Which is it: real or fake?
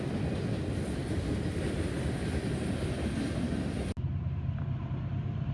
real